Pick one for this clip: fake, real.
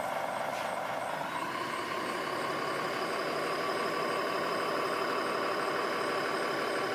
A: real